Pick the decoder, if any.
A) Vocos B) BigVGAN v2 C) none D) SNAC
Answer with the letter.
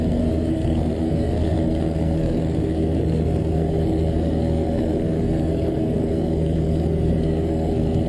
D